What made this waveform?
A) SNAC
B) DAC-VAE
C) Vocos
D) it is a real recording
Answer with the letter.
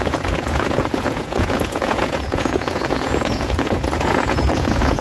C